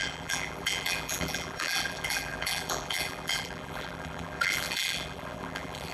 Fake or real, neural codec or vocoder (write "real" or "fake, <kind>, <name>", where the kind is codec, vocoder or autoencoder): fake, vocoder, BigVGAN v2